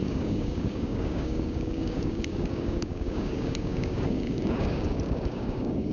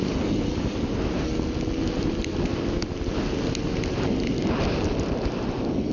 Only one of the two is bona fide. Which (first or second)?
second